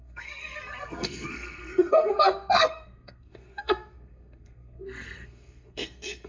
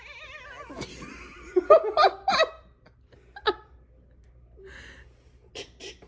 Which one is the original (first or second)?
second